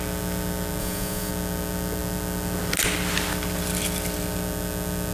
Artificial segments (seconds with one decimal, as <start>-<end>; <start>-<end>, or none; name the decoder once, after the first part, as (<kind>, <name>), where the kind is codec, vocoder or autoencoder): 0.8-1.3 (vocoder, Vocos)